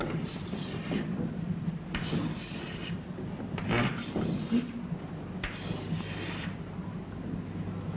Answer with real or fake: real